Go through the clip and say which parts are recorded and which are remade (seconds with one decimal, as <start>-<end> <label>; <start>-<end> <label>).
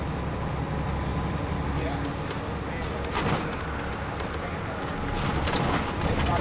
0.0-5.3 recorded; 5.3-6.4 remade